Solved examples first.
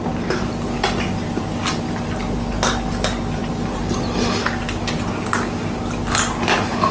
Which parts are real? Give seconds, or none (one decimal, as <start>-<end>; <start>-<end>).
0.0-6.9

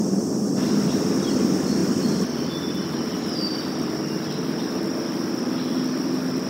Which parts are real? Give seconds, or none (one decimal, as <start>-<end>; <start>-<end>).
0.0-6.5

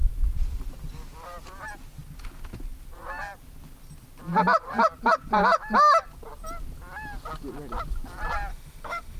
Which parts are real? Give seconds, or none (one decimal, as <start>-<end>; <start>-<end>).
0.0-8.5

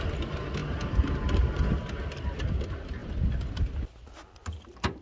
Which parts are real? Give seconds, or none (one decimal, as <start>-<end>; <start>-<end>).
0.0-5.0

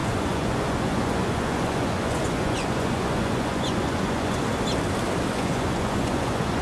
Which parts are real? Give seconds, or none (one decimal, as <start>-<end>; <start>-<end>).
4.5-5.3

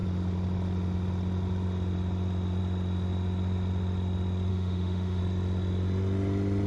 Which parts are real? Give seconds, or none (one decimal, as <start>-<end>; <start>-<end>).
0.0-4.5; 5.2-6.7

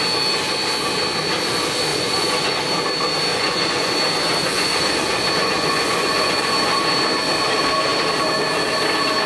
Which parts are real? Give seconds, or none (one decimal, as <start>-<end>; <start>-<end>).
0.0-1.9; 2.6-3.3; 3.9-4.4; 6.9-9.3